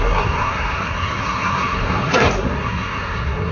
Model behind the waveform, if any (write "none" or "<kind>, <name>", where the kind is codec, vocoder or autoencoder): codec, SNAC